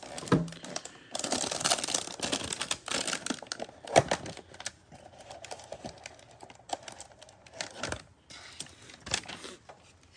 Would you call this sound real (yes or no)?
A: yes